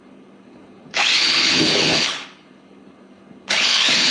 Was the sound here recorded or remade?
remade